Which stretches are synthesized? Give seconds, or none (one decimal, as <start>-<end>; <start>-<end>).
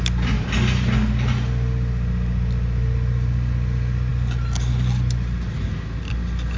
none